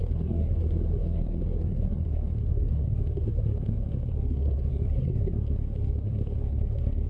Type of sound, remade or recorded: remade